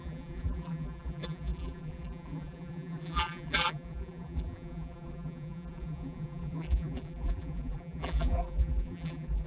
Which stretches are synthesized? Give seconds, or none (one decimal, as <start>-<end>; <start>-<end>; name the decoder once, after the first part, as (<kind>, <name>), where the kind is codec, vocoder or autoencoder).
0.0-9.5 (vocoder, BigVGAN v2)